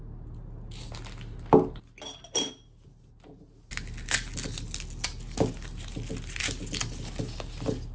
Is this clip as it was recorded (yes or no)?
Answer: yes